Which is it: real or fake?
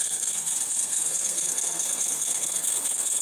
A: fake